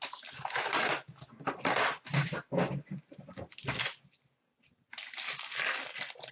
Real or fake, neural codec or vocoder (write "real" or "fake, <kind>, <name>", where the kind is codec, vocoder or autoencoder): real